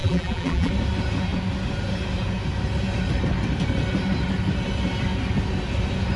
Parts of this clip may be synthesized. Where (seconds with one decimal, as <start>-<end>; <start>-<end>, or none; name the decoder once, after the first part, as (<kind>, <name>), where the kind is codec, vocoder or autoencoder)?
0.0-0.7 (vocoder, BigVGAN v2)